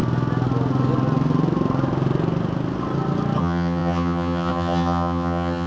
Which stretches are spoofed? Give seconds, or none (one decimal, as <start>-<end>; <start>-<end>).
3.4-5.7